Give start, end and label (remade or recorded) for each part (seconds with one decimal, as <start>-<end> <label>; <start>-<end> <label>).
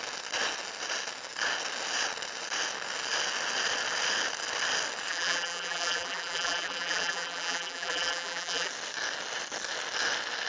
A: 0.0-5.1 recorded; 5.1-8.7 remade; 8.7-10.5 recorded